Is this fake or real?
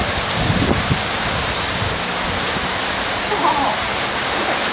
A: fake